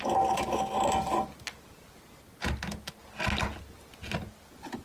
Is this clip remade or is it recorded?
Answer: recorded